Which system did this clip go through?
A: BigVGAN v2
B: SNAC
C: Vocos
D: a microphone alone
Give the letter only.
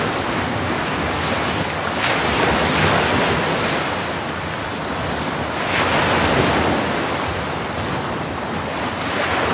D